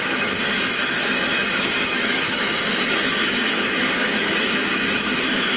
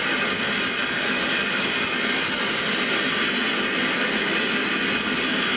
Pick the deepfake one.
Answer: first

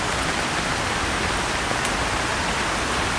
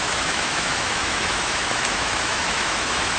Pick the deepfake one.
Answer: second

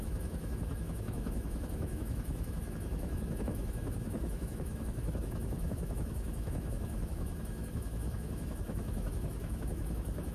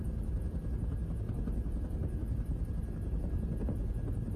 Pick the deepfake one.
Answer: first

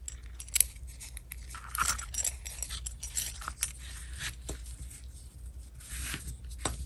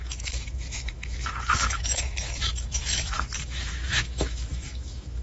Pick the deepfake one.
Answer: second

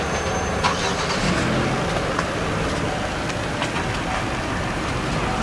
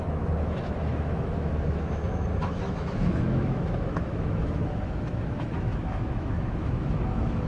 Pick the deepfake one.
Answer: second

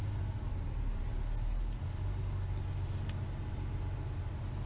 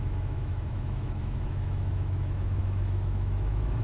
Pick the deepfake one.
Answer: second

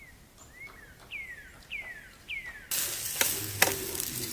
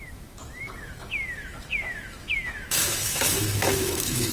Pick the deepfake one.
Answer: second